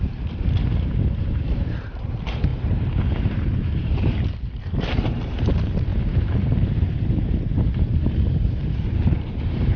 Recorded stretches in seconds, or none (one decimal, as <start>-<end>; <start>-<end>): none